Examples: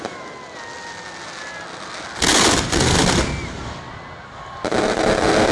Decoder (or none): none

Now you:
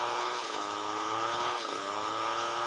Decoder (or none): codec, HILCodec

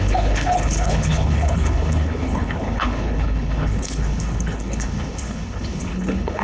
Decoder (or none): codec, HILCodec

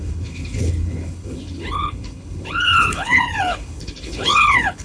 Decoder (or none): codec, HILCodec